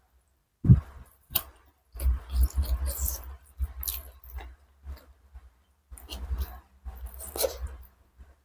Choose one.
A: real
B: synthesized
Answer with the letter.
A